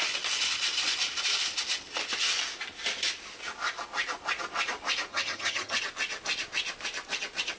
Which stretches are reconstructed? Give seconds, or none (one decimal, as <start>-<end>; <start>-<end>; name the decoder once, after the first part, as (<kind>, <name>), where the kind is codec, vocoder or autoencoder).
5.1-5.8 (vocoder, HiFi-GAN)